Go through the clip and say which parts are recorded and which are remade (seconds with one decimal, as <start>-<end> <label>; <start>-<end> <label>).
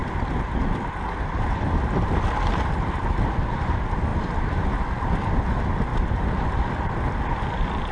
0.0-7.9 recorded